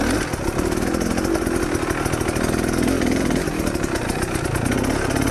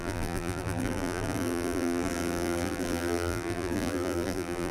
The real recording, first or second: first